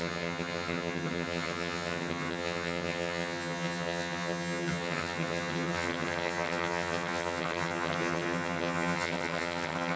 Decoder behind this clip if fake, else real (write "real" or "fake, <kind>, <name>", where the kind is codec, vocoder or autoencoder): fake, vocoder, HiFi-GAN